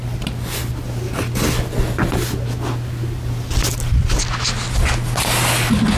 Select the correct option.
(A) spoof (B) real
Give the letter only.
B